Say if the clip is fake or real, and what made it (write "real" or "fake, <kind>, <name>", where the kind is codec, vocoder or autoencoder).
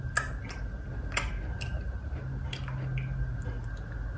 real